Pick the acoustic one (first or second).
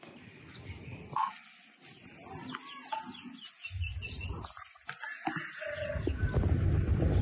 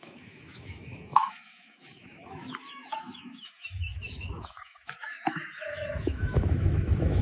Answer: first